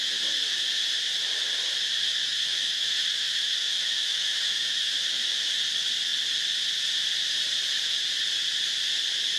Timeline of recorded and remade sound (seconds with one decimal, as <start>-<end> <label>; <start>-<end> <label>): 0.0-2.3 recorded; 2.3-5.6 remade; 5.6-9.4 recorded